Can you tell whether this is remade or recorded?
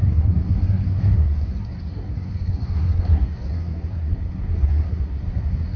remade